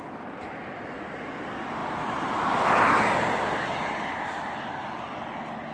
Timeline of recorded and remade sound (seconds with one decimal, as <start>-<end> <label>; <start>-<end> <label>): 0.0-5.7 recorded